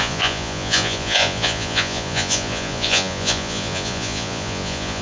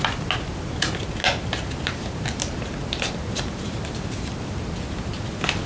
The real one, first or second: second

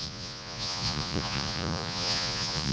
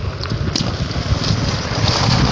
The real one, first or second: second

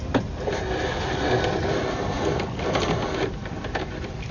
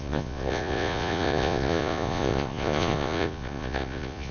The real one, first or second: first